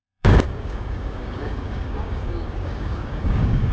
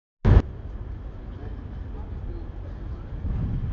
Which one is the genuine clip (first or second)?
second